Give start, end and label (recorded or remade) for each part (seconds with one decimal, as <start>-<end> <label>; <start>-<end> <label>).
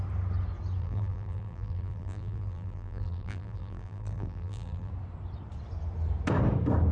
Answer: 0.0-0.8 recorded; 0.8-4.9 remade; 4.9-6.9 recorded